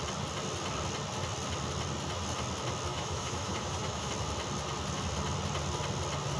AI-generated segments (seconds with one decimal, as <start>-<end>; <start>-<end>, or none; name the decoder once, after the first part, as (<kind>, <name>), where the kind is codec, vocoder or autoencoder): 2.9-4.1 (autoencoder, DAC-VAE)